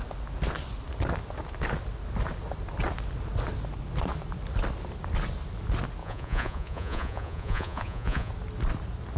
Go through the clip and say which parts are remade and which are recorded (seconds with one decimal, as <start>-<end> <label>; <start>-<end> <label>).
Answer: 0.0-6.0 recorded; 6.0-8.3 remade; 8.3-9.2 recorded